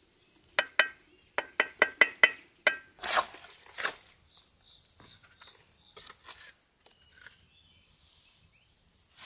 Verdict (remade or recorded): recorded